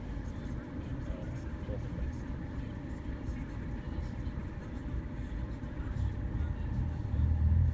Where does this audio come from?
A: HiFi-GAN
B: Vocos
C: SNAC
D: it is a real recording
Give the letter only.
D